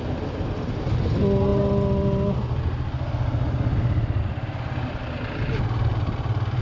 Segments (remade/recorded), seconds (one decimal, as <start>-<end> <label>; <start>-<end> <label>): 0.0-6.6 recorded